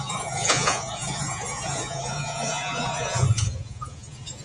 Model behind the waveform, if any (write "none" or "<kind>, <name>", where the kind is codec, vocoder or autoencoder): vocoder, Vocos